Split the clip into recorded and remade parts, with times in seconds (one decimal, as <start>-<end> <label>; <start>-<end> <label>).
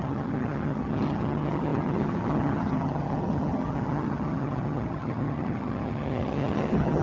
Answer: 0.0-7.0 remade